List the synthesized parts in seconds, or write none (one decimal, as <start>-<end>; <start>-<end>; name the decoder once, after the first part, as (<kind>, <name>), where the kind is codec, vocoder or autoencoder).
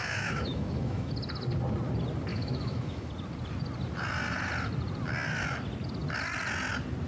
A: 0.0-1.1 (autoencoder, DAC-VAE); 2.3-3.1